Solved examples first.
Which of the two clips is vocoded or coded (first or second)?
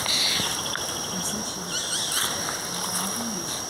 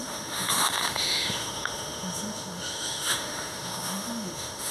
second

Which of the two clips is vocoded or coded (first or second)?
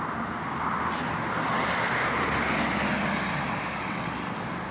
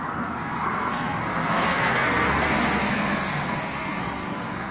second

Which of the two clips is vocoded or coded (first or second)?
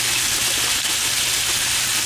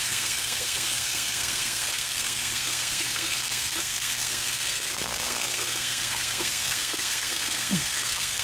second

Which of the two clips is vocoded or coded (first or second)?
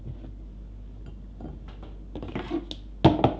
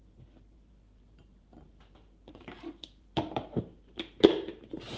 second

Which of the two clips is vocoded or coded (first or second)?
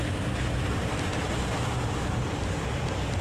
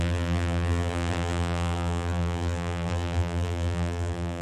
second